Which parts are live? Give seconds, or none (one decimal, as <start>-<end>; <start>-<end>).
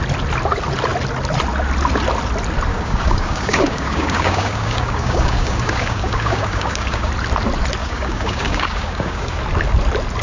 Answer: 0.0-2.7; 7.1-7.8; 9.4-10.2